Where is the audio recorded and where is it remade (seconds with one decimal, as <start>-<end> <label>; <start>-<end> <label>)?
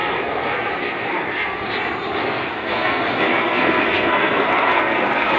0.0-1.7 remade; 1.7-2.2 recorded; 2.2-5.4 remade